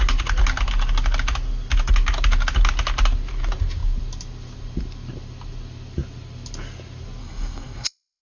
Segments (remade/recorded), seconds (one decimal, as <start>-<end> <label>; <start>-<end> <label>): 0.0-7.2 recorded; 7.2-8.2 remade